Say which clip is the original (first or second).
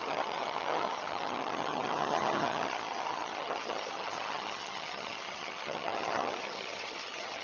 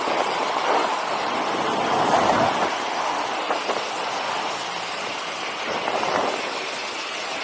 second